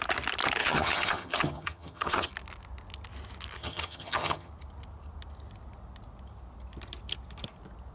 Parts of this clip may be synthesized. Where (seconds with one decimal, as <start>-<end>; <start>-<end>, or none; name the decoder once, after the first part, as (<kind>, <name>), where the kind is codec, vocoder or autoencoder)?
0.6-2.3 (vocoder, HiFi-GAN); 3.6-4.5